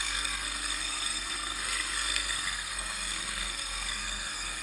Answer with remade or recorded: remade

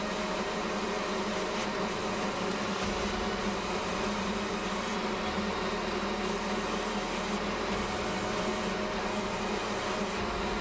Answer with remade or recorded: recorded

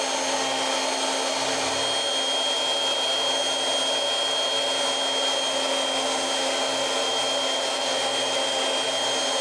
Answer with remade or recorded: recorded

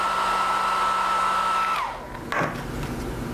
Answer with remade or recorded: recorded